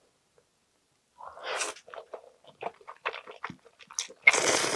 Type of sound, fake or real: real